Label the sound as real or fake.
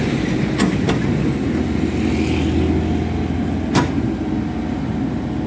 real